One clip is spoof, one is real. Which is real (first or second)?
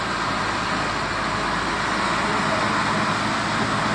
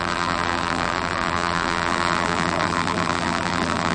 first